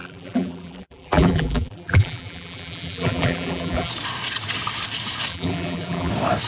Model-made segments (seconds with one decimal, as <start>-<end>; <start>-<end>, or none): 0.0-3.9; 5.3-6.1

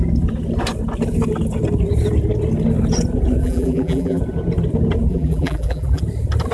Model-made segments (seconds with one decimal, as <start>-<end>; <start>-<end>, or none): 3.4-4.2; 5.1-6.0

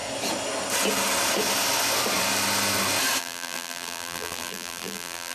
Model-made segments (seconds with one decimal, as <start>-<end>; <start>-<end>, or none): 3.2-5.3